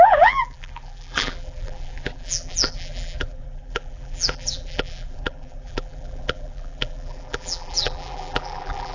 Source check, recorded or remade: remade